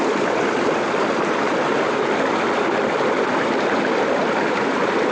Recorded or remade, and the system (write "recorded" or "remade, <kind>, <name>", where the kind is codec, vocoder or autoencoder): recorded